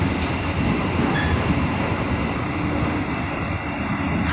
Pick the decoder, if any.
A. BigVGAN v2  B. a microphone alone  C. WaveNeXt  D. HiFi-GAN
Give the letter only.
B